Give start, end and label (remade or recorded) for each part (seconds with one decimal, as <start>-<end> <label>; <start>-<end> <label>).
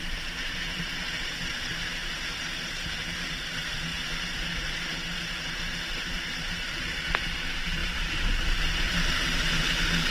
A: 0.0-3.9 remade; 3.9-5.8 recorded; 5.8-10.1 remade